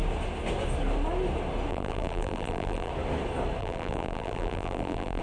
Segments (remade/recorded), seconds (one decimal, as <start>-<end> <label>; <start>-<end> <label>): 0.0-1.7 recorded; 1.7-2.9 remade; 2.9-3.6 recorded; 3.6-5.2 remade